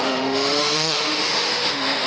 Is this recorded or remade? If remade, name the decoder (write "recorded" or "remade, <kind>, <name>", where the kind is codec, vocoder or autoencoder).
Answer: remade, autoencoder, DAC-VAE